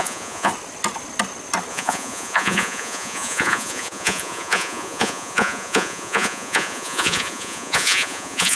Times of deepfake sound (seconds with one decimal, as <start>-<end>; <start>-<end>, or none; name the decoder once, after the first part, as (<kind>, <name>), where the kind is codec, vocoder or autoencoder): 0.0-0.5 (vocoder, Vocos); 1.7-8.6